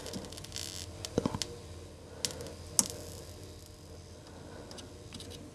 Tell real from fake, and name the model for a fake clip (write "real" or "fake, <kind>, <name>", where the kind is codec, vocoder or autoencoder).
real